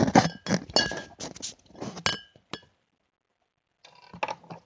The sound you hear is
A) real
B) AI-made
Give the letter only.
A